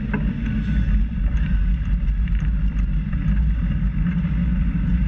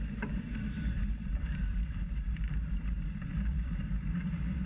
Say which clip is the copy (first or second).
second